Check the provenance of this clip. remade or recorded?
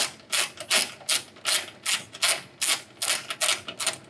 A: recorded